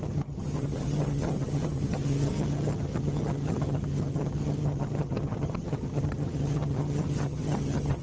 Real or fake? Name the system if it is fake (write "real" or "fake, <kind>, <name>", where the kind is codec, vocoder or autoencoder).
fake, vocoder, HiFi-GAN